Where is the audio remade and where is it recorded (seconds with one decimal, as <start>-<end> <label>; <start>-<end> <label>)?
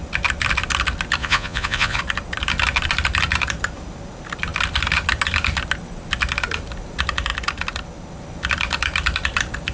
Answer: 0.0-1.2 recorded; 1.2-2.0 remade; 2.0-9.7 recorded